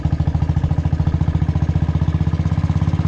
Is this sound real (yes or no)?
yes